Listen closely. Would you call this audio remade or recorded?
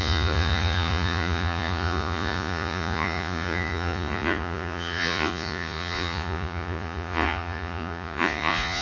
remade